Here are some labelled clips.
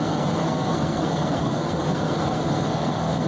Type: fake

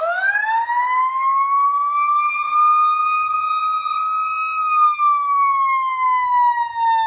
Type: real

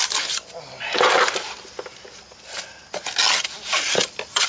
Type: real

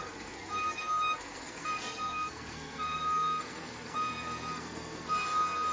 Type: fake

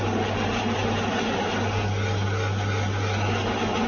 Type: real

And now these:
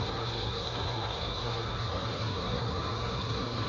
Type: fake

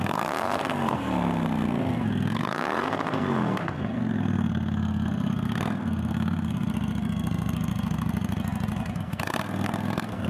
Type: fake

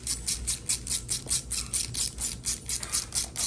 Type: real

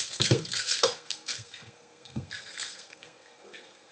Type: fake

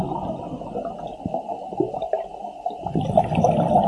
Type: real